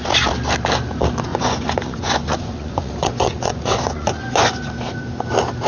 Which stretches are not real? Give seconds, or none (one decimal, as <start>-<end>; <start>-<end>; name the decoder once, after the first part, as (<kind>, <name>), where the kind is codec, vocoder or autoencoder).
1.3-4.7 (vocoder, Vocos)